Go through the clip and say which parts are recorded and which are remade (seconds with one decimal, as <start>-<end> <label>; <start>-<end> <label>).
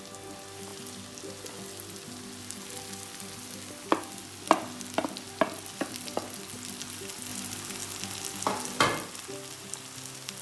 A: 0.0-10.4 recorded